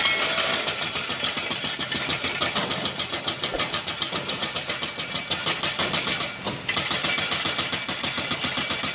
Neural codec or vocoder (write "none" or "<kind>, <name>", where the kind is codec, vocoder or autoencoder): none